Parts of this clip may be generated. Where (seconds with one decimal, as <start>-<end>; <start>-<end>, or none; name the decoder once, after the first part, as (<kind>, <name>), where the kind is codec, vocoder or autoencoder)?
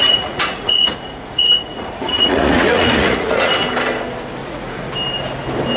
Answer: 0.0-3.5 (vocoder, Vocos); 4.4-4.9